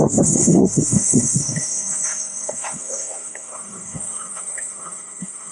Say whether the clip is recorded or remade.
remade